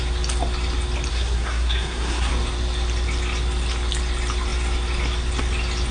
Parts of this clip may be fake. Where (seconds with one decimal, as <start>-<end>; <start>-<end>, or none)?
1.1-2.3